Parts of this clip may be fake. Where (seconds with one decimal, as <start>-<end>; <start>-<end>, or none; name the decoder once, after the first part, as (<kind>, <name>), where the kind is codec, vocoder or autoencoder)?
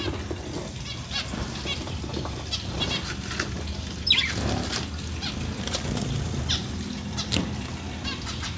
none